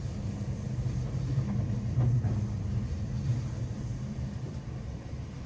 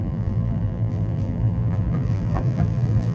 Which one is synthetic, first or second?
second